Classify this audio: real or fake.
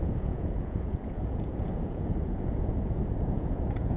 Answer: fake